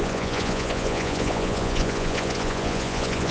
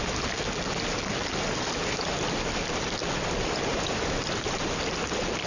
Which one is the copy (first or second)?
first